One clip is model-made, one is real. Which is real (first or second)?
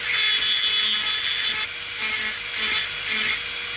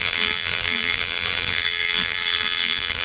first